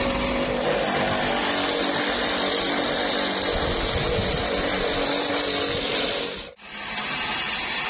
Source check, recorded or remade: recorded